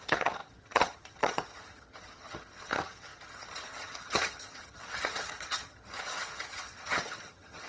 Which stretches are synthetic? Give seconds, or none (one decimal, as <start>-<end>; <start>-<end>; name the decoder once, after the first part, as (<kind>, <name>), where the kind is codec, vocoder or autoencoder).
0.0-7.7 (vocoder, HiFi-GAN)